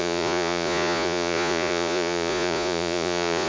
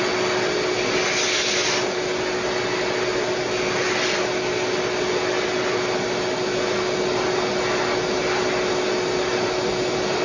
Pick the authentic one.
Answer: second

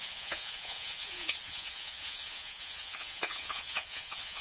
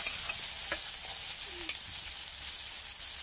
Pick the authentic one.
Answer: second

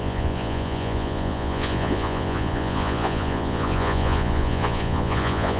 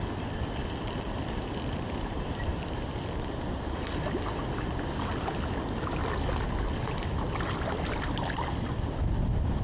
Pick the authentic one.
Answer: second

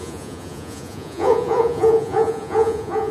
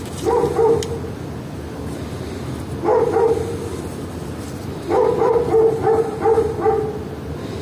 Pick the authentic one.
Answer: second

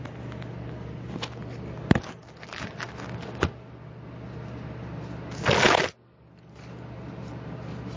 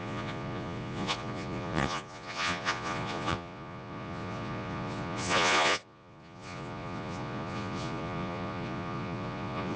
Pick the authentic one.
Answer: first